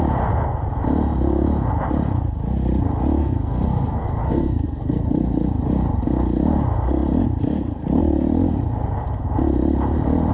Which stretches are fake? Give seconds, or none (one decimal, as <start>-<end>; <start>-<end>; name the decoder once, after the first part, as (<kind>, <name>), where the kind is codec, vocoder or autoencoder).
3.2-5.4 (codec, SNAC)